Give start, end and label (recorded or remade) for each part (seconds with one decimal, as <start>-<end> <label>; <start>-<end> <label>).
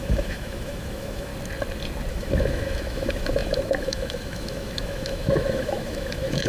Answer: 0.0-1.3 remade; 1.3-2.1 recorded; 2.1-6.5 remade